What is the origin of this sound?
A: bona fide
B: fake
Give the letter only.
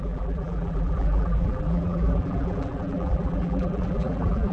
B